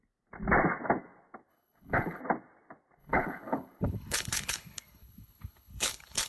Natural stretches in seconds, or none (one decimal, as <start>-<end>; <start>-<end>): 0.0-1.5; 2.2-3.0